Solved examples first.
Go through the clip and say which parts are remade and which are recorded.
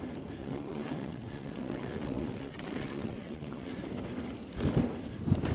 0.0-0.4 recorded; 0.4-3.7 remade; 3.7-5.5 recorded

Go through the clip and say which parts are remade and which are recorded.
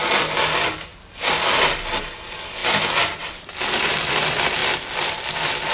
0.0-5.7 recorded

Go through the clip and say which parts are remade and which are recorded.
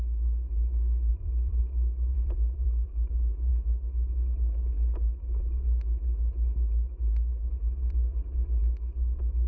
0.0-1.1 recorded; 1.1-1.6 remade; 1.6-2.1 recorded; 2.1-3.1 remade; 3.1-9.5 recorded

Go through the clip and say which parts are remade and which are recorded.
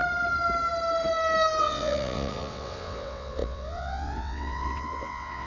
0.0-1.6 recorded; 1.6-5.5 remade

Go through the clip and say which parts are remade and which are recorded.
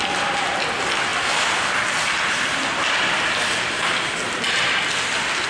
0.0-5.5 recorded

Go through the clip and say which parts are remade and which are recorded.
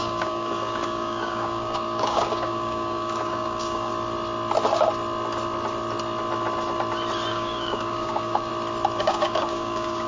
0.0-3.9 remade; 3.9-7.3 recorded; 7.3-8.5 remade; 8.5-9.0 recorded; 9.0-10.1 remade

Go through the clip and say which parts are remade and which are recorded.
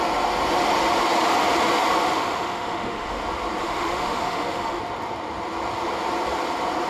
0.0-2.1 recorded; 2.1-3.2 remade; 3.2-3.6 recorded; 3.6-4.8 remade; 4.8-6.9 recorded